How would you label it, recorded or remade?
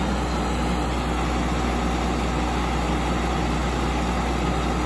recorded